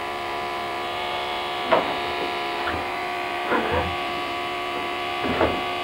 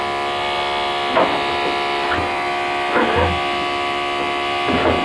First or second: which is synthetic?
first